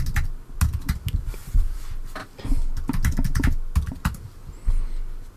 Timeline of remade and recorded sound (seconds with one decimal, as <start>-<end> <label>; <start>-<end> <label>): 0.0-5.4 recorded